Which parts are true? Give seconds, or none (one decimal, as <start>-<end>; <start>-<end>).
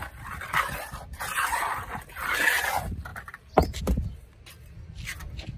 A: none